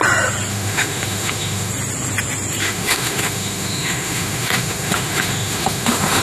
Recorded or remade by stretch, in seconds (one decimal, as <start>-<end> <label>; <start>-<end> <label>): 0.0-0.5 recorded; 0.5-1.7 remade; 1.7-2.6 recorded; 2.6-6.2 remade